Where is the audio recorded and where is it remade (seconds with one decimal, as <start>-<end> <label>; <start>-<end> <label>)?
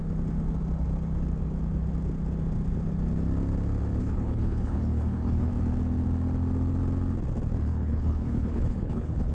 0.0-4.0 recorded; 4.0-5.5 remade; 5.5-7.7 recorded; 7.7-9.3 remade